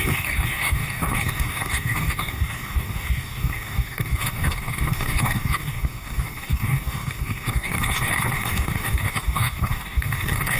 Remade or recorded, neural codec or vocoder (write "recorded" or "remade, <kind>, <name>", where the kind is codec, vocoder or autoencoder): remade, codec, DAC